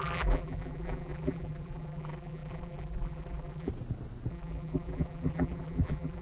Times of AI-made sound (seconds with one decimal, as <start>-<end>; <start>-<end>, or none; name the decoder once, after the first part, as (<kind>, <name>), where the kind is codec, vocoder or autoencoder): 0.0-3.7 (vocoder, BigVGAN v2); 4.3-6.2